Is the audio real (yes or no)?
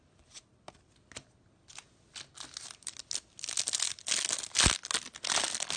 yes